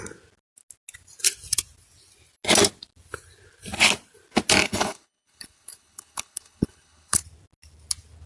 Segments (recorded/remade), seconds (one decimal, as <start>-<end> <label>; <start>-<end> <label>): 0.0-4.6 recorded; 4.6-7.2 remade; 7.2-8.3 recorded